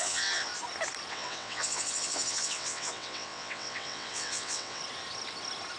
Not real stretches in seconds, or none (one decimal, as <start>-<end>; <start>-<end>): 0.0-0.5; 1.1-4.8